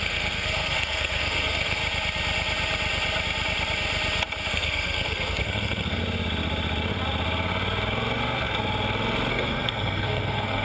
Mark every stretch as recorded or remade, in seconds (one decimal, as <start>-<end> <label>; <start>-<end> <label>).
0.0-1.8 remade; 1.8-4.5 recorded; 4.5-6.0 remade; 6.0-9.3 recorded; 9.3-10.6 remade